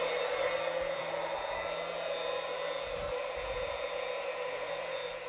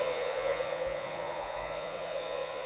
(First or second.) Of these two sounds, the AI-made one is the second